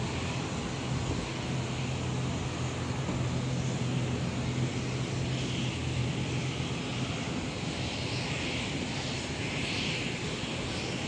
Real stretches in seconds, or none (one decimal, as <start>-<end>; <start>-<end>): 0.0-5.8; 6.4-6.9